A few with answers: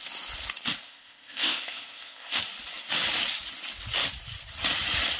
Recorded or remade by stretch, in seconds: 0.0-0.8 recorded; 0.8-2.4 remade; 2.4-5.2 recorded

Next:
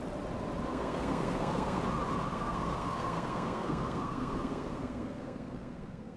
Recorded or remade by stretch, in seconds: 0.0-0.7 recorded; 0.7-1.8 remade; 1.8-2.3 recorded; 2.3-6.2 remade

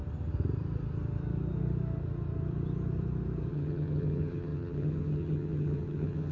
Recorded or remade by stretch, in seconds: 0.0-3.5 recorded; 3.5-6.3 remade

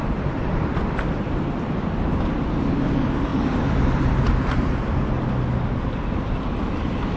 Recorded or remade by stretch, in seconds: 0.0-2.5 remade; 2.5-3.3 recorded; 3.3-4.1 remade; 4.1-7.2 recorded

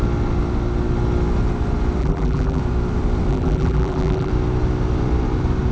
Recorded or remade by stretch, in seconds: 0.0-2.0 recorded; 2.0-2.6 remade; 2.6-3.3 recorded; 3.3-4.3 remade; 4.3-5.7 recorded

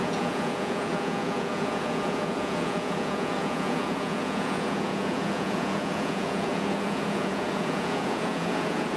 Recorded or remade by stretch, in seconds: 0.0-9.0 remade